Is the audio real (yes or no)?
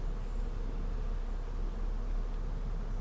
yes